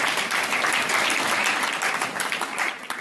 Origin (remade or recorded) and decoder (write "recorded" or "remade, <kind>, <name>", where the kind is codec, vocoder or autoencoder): recorded